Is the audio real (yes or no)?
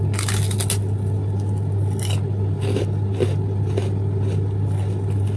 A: yes